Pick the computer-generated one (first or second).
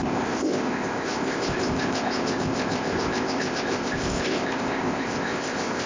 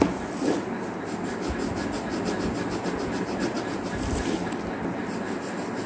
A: first